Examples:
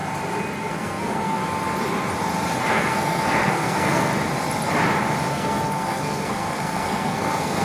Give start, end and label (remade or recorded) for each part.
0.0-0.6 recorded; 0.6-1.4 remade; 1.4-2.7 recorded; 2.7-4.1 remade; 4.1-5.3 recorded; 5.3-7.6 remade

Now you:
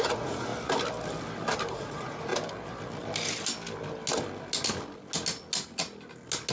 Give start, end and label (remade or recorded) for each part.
0.0-0.5 remade; 0.5-1.7 recorded; 1.7-2.3 remade; 2.3-6.5 recorded

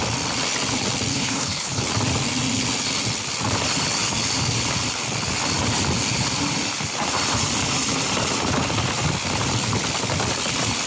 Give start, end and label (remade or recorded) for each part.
0.0-1.1 recorded; 1.1-1.8 remade; 1.8-10.9 recorded

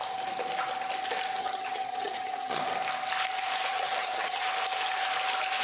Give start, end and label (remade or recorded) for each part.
0.0-1.4 recorded; 1.4-2.6 remade; 2.6-3.7 recorded; 3.7-4.5 remade; 4.5-5.6 recorded

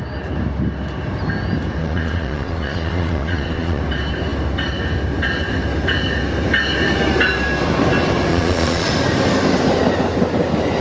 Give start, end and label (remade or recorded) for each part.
0.0-1.8 recorded; 1.8-3.8 remade; 3.8-8.3 recorded; 8.3-8.9 remade; 8.9-10.8 recorded

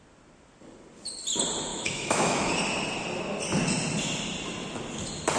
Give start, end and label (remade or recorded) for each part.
0.0-1.7 recorded; 1.7-2.5 remade; 2.5-5.4 recorded

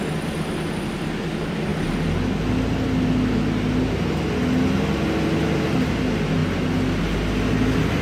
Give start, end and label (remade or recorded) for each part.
0.0-8.0 recorded